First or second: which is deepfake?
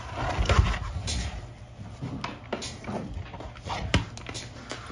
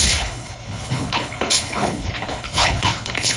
second